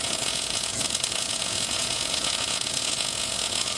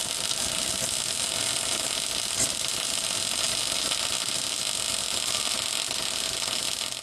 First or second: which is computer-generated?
first